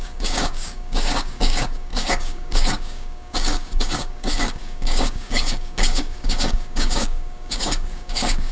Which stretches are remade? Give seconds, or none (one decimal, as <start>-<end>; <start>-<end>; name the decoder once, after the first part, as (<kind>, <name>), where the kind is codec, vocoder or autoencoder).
0.0-8.5 (codec, DAC)